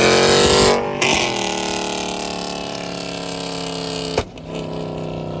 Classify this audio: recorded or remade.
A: recorded